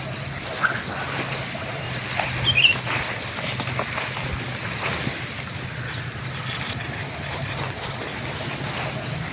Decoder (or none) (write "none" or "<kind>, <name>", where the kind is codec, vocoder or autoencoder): none